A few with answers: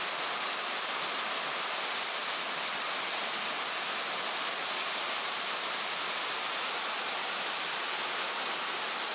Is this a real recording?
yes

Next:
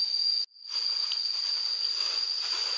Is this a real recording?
yes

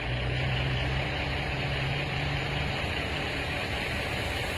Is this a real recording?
no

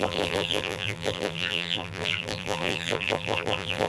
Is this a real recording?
no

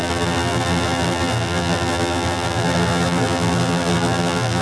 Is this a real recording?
no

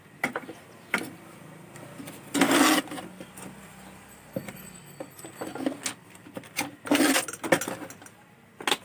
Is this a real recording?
yes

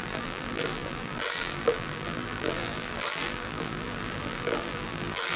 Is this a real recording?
no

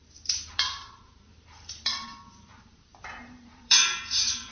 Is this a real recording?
no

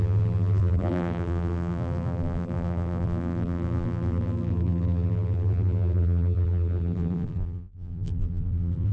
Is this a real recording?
no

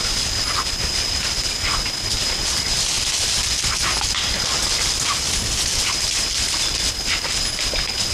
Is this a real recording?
yes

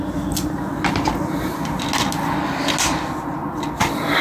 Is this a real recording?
yes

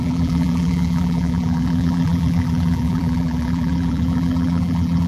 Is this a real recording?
no